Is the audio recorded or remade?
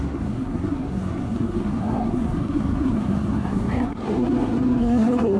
remade